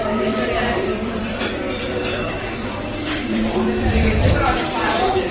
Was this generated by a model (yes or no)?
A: yes